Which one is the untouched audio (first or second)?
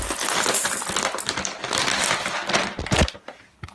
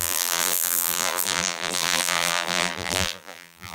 first